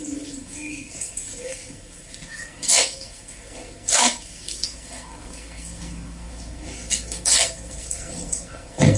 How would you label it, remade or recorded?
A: remade